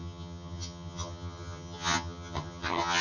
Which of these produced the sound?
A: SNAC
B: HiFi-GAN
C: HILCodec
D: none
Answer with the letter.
B